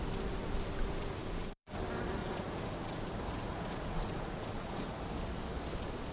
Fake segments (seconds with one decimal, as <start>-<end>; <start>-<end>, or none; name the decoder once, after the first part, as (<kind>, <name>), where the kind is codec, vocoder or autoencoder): 1.2-1.8 (vocoder, Vocos); 2.2-3.1; 3.5-5.0